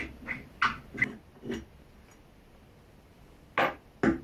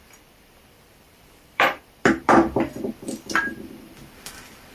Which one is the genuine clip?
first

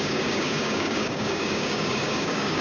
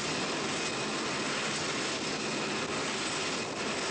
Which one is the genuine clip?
second